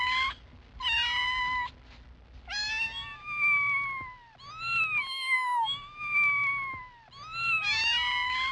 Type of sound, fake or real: real